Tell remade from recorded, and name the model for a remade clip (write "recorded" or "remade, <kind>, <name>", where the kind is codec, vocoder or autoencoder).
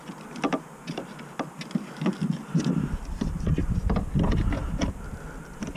recorded